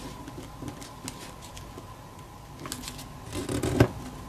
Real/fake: real